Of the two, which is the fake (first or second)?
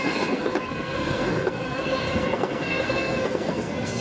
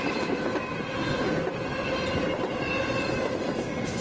first